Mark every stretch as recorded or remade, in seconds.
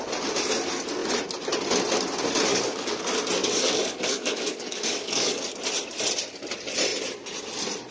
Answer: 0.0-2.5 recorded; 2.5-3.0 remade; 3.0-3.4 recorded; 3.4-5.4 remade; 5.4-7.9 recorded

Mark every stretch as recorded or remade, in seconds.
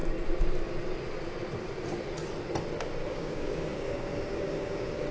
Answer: 0.0-3.1 recorded; 3.1-5.1 remade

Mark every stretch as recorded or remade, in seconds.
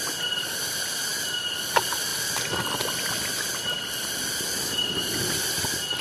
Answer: 0.0-6.0 recorded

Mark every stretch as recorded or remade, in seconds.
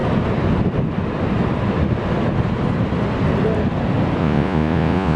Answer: 0.0-4.2 recorded; 4.2-5.2 remade